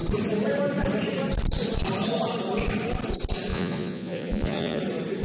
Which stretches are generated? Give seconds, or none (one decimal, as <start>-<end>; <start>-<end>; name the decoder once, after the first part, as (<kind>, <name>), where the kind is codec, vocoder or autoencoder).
3.5-4.8 (vocoder, Vocos)